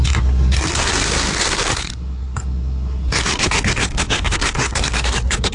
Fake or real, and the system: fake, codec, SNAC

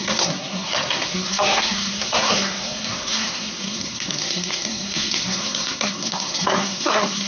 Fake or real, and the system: fake, codec, SNAC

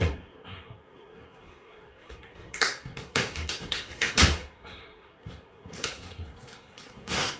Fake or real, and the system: fake, codec, SNAC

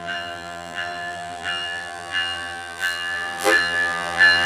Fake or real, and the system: fake, vocoder, BigVGAN v2